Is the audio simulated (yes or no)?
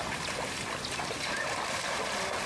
no